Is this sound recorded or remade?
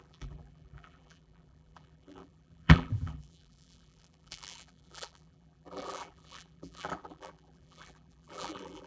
remade